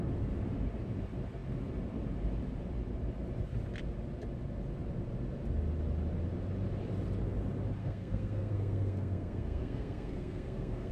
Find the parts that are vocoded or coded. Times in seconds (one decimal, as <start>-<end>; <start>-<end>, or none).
7.8-10.9

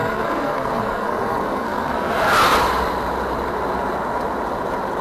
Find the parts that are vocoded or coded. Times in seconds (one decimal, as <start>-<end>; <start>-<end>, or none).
0.0-2.1

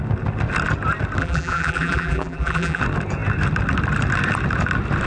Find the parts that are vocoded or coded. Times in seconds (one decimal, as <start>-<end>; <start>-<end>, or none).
1.2-2.8